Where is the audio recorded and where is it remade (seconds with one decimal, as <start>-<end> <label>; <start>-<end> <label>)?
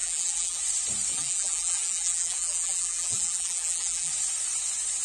0.0-0.6 remade; 0.6-1.1 recorded; 1.1-4.1 remade; 4.1-5.0 recorded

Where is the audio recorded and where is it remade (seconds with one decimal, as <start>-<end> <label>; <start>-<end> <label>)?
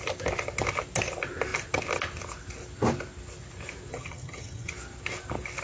0.0-3.9 recorded; 3.9-4.7 remade; 4.7-5.6 recorded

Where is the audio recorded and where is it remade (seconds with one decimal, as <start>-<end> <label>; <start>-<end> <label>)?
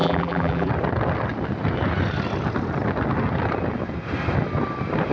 0.0-0.7 remade; 0.7-5.1 recorded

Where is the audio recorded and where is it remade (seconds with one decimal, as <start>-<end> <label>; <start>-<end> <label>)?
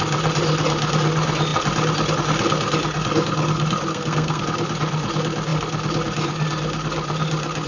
0.0-3.9 recorded; 3.9-4.4 remade; 4.4-7.7 recorded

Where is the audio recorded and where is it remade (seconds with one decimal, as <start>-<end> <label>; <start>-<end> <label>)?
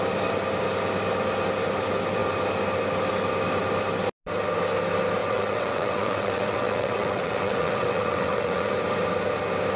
0.0-5.2 recorded; 5.2-8.7 remade; 8.7-9.8 recorded